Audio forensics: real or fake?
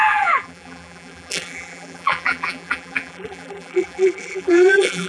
fake